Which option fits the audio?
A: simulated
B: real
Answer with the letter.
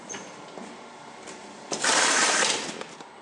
B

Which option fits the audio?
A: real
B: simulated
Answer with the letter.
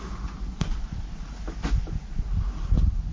A